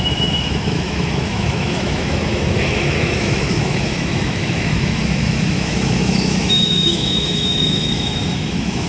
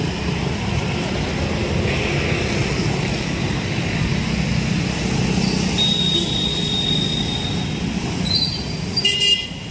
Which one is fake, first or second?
first